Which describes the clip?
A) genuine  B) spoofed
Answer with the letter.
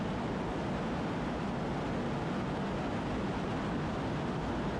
A